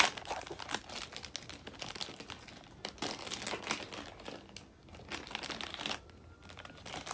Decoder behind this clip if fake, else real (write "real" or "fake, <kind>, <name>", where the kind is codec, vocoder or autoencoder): real